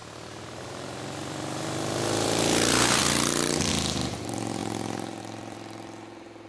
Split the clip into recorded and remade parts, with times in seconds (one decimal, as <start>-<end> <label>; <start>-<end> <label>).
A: 0.0-0.6 recorded; 0.6-4.6 remade; 4.6-5.2 recorded; 5.2-6.5 remade